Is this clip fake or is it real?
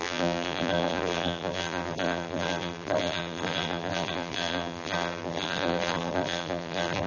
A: fake